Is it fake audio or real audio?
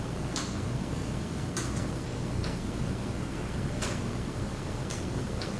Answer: fake